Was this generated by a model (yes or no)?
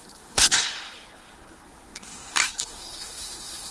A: yes